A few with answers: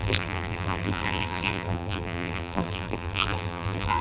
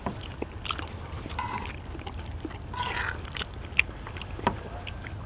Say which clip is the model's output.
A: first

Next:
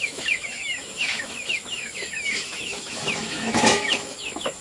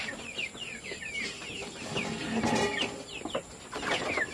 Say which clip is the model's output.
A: first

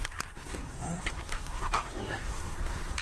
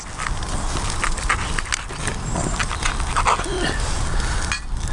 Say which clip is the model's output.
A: first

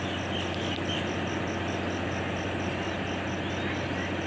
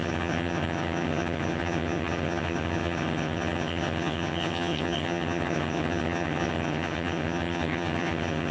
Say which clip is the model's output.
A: second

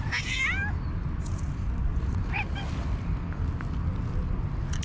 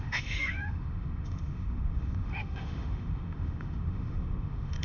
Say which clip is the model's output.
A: second